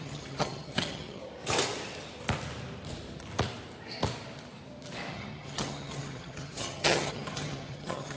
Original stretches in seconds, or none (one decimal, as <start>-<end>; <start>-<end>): 1.2-5.1